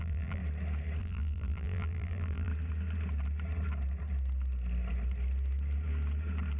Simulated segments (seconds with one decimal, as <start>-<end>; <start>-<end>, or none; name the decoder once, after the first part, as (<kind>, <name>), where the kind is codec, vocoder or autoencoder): 0.0-0.4 (vocoder, BigVGAN v2); 1.0-2.5